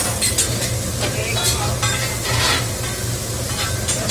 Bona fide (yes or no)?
yes